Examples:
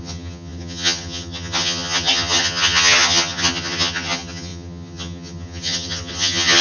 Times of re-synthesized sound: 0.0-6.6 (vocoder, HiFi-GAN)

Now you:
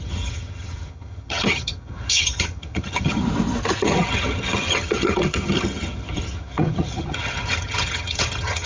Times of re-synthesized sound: 0.0-3.2 (vocoder, HiFi-GAN); 3.8-8.7

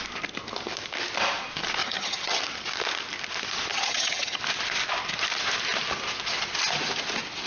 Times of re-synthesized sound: 1.8-2.4 (vocoder, HiFi-GAN); 3.7-4.4

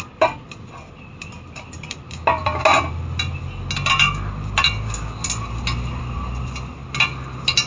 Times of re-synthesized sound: none

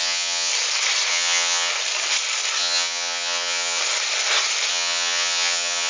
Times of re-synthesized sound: 0.0-0.5 (vocoder, HiFi-GAN); 1.1-1.7; 2.6-3.8; 4.7-5.9

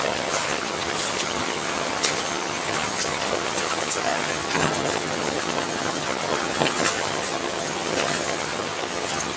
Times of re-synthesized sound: 0.0-9.4 (vocoder, HiFi-GAN)

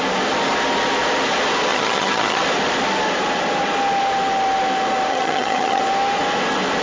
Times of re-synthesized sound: 1.7-2.4 (vocoder, HiFi-GAN); 5.1-5.8

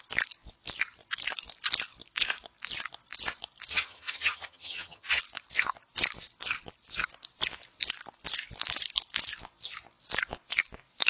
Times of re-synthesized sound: 3.7-5.2 (vocoder, HiFi-GAN)